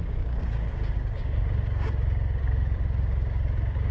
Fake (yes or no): yes